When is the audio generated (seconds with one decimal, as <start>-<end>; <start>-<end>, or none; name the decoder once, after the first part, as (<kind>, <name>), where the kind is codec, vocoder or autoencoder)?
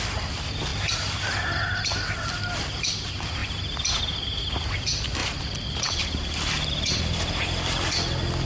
3.4-4.0 (vocoder, BigVGAN v2); 5.2-7.0